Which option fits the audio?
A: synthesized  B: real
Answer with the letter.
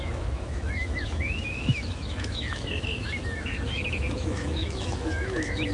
A